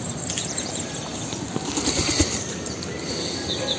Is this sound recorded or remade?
remade